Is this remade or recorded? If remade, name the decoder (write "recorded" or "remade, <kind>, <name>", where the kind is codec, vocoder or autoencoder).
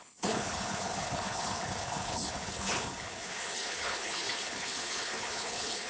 remade, codec, HILCodec